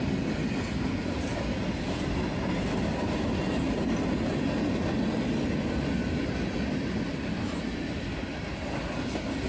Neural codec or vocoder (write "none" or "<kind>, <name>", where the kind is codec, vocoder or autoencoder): none